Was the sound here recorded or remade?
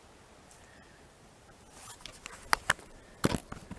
recorded